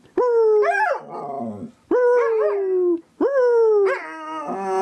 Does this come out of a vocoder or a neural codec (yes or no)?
no